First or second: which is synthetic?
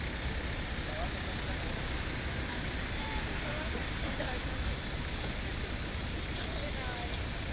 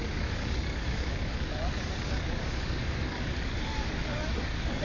second